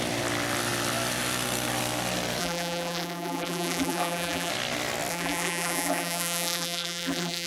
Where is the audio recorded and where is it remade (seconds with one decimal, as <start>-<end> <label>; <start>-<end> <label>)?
0.0-2.4 recorded; 2.4-4.5 remade; 4.5-5.1 recorded; 5.1-7.5 remade